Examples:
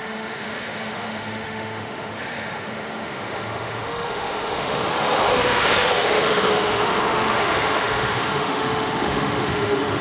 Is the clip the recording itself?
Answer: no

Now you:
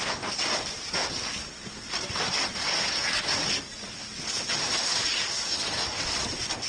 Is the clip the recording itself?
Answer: yes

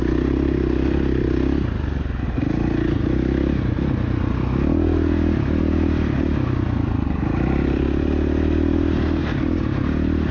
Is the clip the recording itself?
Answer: yes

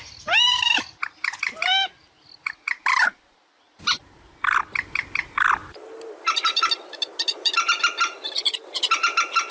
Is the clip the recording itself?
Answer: yes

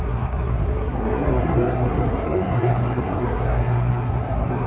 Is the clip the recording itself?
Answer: no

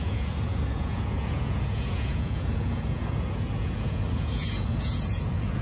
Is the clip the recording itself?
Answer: no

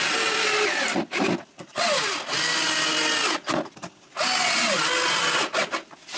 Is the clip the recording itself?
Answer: yes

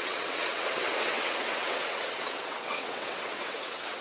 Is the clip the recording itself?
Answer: no